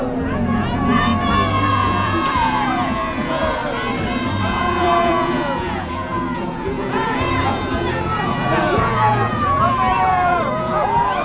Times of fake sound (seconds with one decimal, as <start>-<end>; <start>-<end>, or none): 0.0-1.1; 1.7-3.6; 4.4-11.2